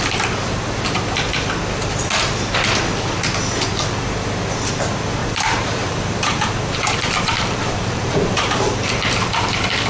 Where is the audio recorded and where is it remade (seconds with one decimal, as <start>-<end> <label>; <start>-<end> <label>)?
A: 0.0-5.2 recorded; 5.2-8.9 remade; 8.9-9.9 recorded